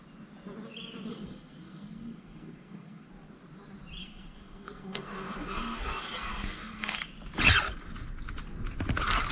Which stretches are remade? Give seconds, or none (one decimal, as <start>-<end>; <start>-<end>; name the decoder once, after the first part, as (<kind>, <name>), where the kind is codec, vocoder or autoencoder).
1.1-3.1 (codec, SNAC); 4.0-7.0